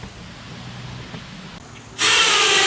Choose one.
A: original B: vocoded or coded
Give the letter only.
A